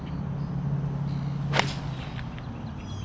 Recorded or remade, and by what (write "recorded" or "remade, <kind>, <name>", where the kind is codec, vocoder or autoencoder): recorded